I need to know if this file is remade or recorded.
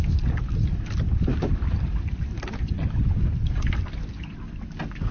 recorded